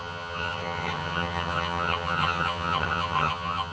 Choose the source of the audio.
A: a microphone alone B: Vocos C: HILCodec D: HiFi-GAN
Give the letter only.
D